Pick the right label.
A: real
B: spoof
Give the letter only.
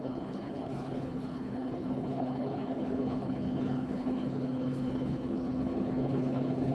B